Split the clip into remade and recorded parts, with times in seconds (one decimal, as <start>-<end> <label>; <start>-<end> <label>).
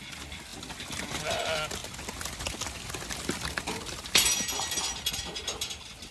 0.0-6.1 recorded